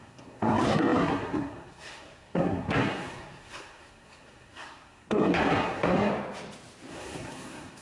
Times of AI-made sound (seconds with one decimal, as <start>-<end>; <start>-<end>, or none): 0.0-6.1; 6.9-7.8